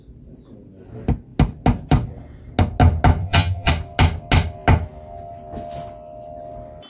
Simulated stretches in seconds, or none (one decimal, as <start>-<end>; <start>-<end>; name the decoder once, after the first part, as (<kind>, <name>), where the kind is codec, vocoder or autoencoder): 3.2-3.7 (vocoder, HiFi-GAN)